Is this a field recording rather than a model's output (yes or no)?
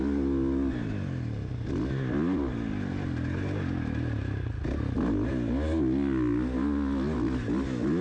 yes